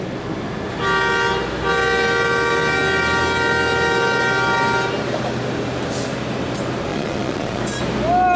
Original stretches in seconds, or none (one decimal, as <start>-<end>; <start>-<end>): 0.0-6.9; 7.6-8.4